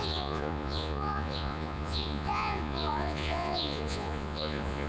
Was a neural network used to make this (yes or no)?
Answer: yes